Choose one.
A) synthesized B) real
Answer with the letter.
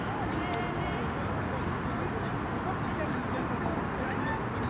B